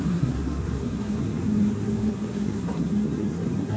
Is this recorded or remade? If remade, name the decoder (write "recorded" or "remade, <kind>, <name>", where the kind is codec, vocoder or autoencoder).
remade, codec, SNAC